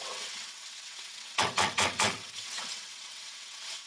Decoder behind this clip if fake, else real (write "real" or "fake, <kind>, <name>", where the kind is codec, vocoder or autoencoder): fake, vocoder, WaveNeXt